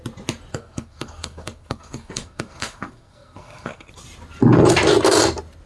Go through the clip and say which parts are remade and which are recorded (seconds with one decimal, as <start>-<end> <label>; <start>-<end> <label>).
0.0-0.5 recorded; 0.5-3.9 remade; 3.9-5.7 recorded